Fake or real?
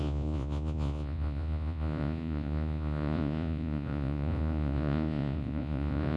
fake